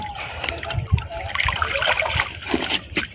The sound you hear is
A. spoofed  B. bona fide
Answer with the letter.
B